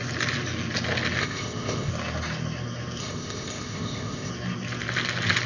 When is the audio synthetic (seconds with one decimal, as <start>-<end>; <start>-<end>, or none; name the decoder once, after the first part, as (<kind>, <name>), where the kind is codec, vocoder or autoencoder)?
1.2-1.9 (codec, ZipCodec); 3.0-4.3